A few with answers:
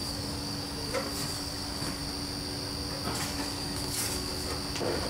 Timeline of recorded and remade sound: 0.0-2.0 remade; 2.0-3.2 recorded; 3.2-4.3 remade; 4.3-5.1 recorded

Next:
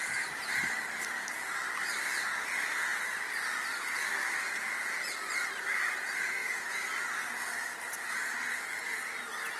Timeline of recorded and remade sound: 0.0-1.6 recorded; 1.6-2.3 remade; 2.3-6.4 recorded; 6.4-8.8 remade; 8.8-9.6 recorded

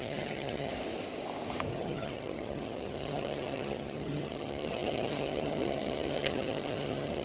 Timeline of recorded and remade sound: 0.0-0.7 remade; 0.7-1.7 recorded; 1.7-7.2 remade

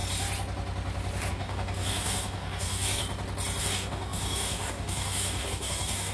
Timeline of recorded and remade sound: 0.0-1.3 recorded; 1.3-3.0 remade; 3.0-3.6 recorded; 3.6-6.1 remade

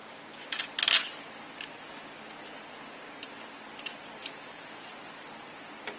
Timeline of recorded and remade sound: 0.0-4.2 recorded; 4.2-4.9 remade; 4.9-6.0 recorded

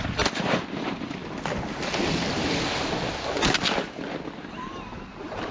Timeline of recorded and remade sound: 0.0-1.2 remade; 1.2-4.5 recorded; 4.5-5.5 remade

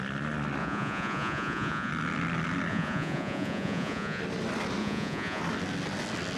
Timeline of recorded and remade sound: 0.0-0.6 recorded; 0.6-1.9 remade; 1.9-2.7 recorded; 2.7-4.2 remade; 4.2-4.8 recorded; 4.8-5.4 remade; 5.4-6.4 recorded